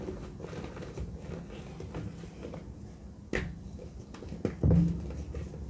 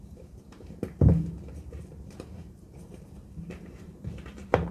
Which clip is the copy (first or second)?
second